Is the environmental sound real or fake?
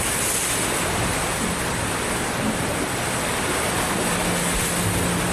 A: real